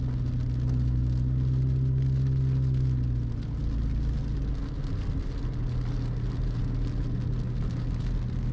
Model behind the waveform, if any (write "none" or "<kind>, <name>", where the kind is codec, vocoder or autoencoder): none